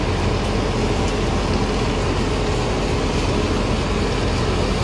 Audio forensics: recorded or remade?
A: recorded